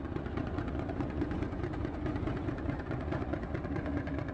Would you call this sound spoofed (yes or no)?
yes